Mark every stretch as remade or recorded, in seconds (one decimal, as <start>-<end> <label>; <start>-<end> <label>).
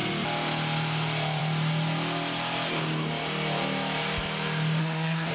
0.0-4.8 recorded; 4.8-5.3 remade